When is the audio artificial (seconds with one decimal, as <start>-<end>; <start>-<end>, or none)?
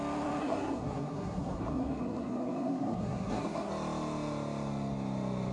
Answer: 0.4-3.7